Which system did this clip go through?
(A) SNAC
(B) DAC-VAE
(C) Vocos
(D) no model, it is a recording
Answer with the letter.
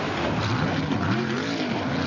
D